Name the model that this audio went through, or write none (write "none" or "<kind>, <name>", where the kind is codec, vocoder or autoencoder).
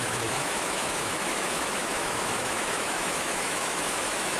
autoencoder, DAC-VAE